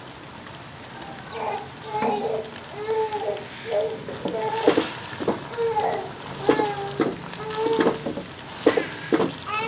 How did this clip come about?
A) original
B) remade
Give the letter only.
A